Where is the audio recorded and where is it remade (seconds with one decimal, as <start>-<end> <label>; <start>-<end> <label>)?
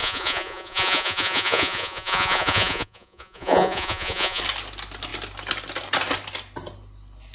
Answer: 0.0-4.4 remade; 4.4-7.3 recorded